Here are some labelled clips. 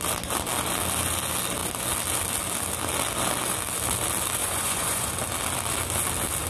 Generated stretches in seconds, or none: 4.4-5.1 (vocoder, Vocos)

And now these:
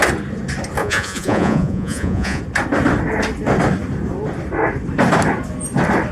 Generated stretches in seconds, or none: 0.8-2.4 (vocoder, Vocos)

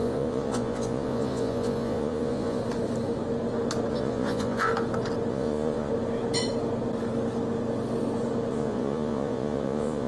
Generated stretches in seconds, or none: 0.0-2.6 (vocoder, Vocos); 3.9-4.7; 5.3-5.9; 8.5-10.1

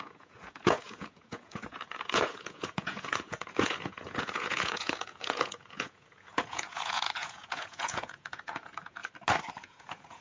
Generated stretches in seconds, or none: 0.0-9.0 (vocoder, Vocos); 9.6-10.2